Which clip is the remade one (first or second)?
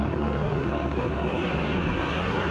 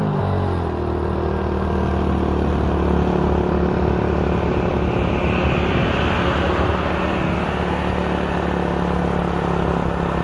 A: first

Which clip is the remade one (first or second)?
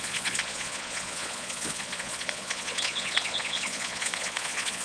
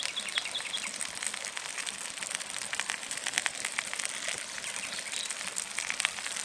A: first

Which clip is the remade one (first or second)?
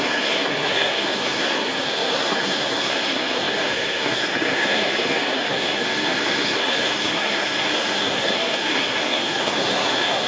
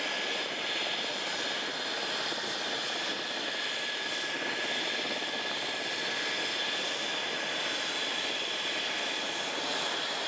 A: first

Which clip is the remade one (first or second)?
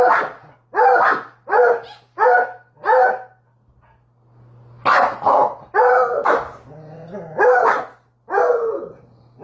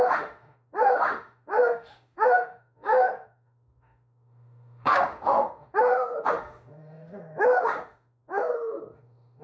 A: second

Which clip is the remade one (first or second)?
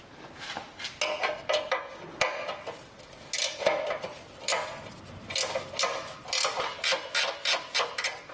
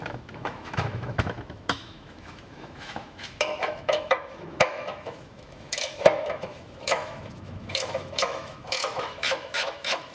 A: second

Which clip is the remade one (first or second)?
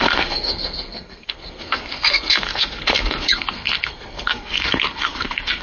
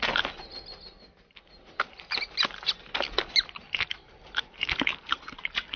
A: first